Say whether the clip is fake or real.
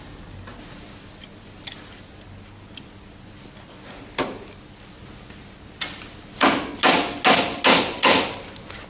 real